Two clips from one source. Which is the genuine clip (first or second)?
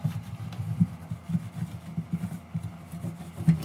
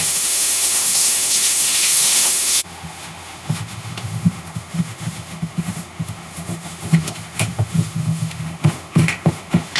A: first